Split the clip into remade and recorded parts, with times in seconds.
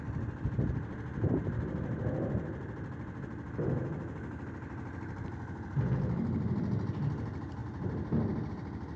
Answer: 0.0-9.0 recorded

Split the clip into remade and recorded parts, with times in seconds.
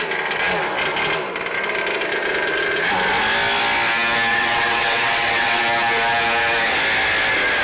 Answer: 0.0-4.3 recorded; 4.3-5.6 remade; 5.6-7.6 recorded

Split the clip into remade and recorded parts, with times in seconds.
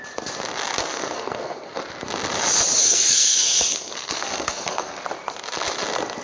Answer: 0.0-0.9 recorded; 0.9-1.8 remade; 1.8-2.8 recorded; 2.8-5.0 remade; 5.0-6.2 recorded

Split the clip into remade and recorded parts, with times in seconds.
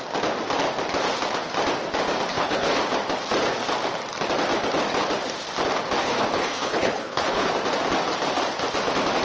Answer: 0.0-2.3 recorded; 2.3-2.8 remade; 2.8-6.0 recorded; 6.0-7.5 remade; 7.5-9.2 recorded